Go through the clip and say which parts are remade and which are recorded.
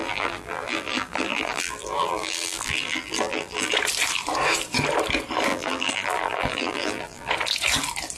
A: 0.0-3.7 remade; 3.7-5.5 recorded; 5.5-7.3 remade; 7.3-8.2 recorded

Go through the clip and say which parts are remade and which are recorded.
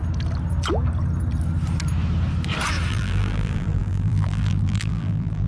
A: 0.0-2.9 recorded; 2.9-5.5 remade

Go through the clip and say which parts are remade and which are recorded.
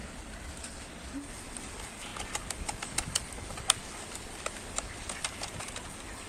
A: 0.0-6.3 recorded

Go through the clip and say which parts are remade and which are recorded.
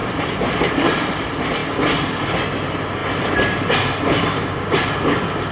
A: 0.0-1.1 remade; 1.1-1.6 recorded; 1.6-2.1 remade; 2.1-3.0 recorded; 3.0-5.0 remade; 5.0-5.5 recorded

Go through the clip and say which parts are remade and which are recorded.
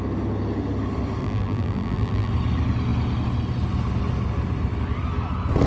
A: 0.0-1.2 recorded; 1.2-2.3 remade; 2.3-5.7 recorded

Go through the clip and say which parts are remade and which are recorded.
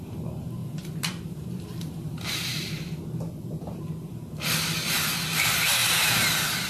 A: 0.0-0.6 recorded; 0.6-2.7 remade; 2.7-5.8 recorded; 5.8-6.7 remade